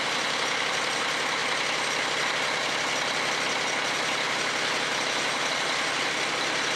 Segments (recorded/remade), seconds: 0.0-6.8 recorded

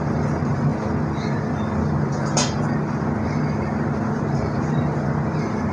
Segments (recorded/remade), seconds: 0.0-0.7 remade; 0.7-4.1 recorded; 4.1-5.7 remade